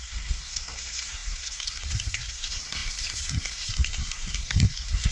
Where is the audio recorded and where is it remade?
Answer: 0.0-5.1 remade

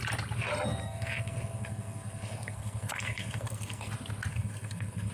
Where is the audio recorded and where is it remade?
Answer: 0.0-0.8 recorded; 0.8-3.9 remade; 3.9-4.3 recorded; 4.3-5.1 remade

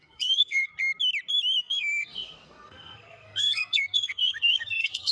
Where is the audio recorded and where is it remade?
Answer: 0.0-0.7 remade; 0.7-1.6 recorded; 1.6-5.1 remade

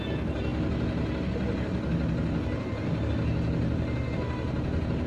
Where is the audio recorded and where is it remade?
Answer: 0.0-5.1 recorded

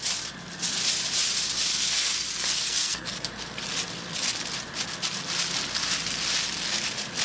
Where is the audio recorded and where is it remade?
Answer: 0.0-1.7 recorded; 1.7-3.3 remade; 3.3-7.2 recorded